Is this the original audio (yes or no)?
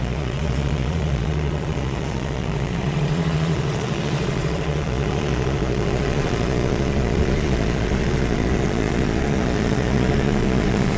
no